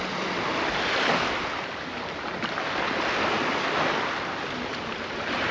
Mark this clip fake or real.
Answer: real